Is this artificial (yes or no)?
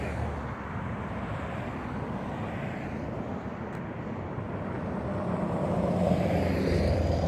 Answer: yes